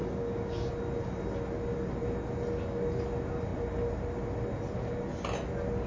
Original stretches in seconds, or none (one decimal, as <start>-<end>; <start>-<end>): 0.7-5.9